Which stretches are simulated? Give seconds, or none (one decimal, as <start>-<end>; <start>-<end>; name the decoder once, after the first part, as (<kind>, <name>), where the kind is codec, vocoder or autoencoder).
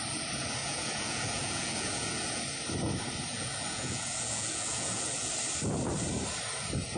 0.6-2.4 (vocoder, Vocos); 3.3-5.3